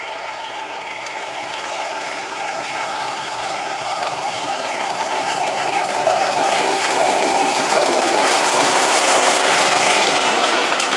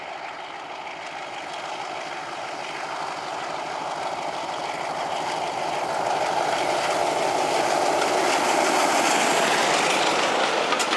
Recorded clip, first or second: second